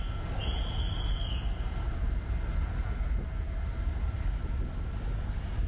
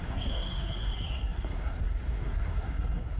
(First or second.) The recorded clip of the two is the first